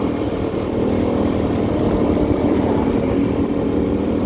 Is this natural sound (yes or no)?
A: no